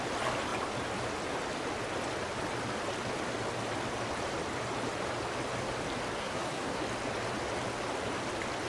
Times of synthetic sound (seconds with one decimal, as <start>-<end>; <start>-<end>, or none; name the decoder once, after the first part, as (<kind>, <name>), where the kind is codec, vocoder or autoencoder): 6.2-6.8 (codec, SNAC)